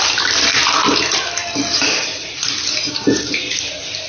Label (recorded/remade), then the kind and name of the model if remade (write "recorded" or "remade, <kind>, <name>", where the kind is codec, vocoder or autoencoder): recorded